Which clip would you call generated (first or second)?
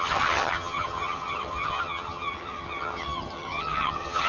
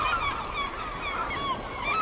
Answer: first